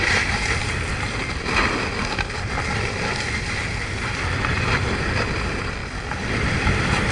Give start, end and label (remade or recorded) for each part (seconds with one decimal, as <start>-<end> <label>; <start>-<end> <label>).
0.0-0.6 remade; 0.6-4.9 recorded; 4.9-5.8 remade; 5.8-6.5 recorded; 6.5-7.1 remade

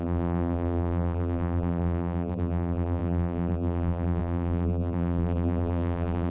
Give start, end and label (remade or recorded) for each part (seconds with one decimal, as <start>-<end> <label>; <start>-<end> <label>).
0.0-6.3 remade

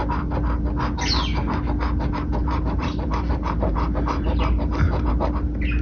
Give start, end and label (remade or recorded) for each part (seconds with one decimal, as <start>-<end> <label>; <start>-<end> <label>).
0.0-2.4 recorded; 2.4-5.1 remade; 5.1-5.8 recorded

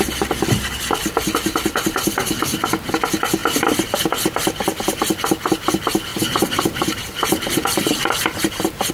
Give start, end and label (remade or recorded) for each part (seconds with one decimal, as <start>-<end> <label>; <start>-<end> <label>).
0.0-6.1 recorded; 6.1-8.9 remade

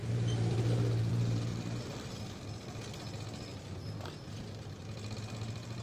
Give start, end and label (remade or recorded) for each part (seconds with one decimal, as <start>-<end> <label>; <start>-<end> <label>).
0.0-1.5 recorded; 1.5-2.1 remade; 2.1-3.5 recorded; 3.5-4.8 remade; 4.8-5.8 recorded

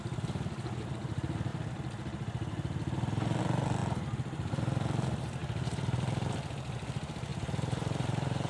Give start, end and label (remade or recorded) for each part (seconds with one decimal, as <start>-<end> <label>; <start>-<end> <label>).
0.0-1.5 remade; 1.5-3.4 recorded; 3.4-8.5 remade

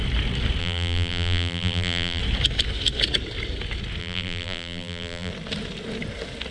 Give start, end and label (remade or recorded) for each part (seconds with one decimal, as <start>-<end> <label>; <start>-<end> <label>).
0.0-0.6 recorded; 0.6-2.2 remade; 2.2-4.0 recorded; 4.0-5.3 remade; 5.3-6.5 recorded